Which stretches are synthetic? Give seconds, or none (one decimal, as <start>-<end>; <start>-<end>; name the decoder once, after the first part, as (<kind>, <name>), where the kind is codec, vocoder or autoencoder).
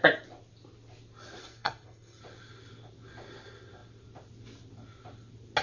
1.4-2.2 (codec, SNAC)